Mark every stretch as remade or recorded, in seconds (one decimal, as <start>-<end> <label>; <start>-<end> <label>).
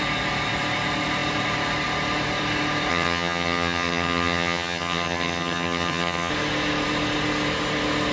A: 0.0-2.9 recorded; 2.9-6.3 remade; 6.3-8.1 recorded